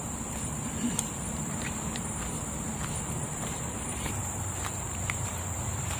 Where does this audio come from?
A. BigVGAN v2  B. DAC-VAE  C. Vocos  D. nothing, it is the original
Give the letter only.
A